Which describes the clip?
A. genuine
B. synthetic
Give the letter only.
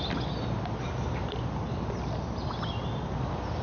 A